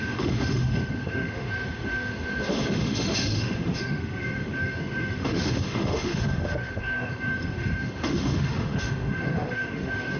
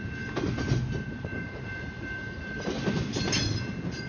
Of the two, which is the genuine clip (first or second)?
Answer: second